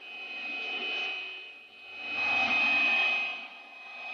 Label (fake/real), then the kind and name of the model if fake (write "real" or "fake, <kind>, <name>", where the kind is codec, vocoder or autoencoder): real